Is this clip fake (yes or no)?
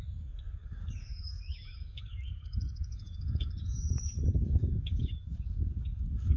yes